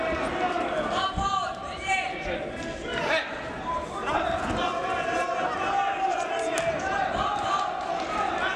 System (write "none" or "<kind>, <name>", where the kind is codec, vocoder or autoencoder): none